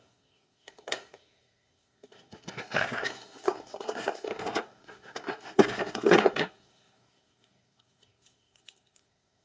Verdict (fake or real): fake